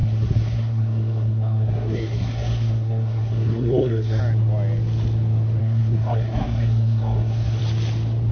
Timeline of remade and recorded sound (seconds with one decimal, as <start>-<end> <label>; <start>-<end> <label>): 0.0-4.2 remade; 4.2-5.6 recorded; 5.6-7.6 remade; 7.6-8.3 recorded